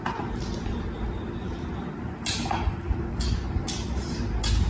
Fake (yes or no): no